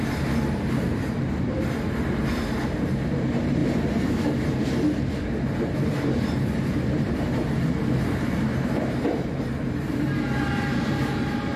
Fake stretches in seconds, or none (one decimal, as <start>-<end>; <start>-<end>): 0.0-3.6; 5.4-11.6